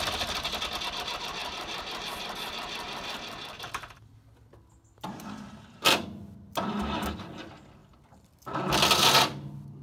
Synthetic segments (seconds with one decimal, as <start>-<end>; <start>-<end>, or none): 1.4-2.5